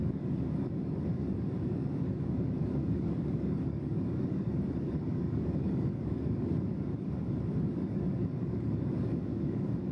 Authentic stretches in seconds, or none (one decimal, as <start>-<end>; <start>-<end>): none